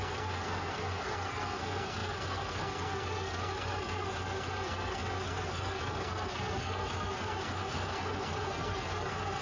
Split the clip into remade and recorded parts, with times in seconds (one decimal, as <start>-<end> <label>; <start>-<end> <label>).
0.0-9.4 remade